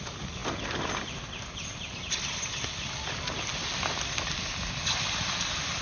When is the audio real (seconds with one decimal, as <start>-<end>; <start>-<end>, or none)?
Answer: 0.0-5.8